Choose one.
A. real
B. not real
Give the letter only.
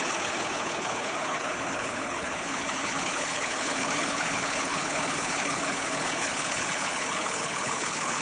B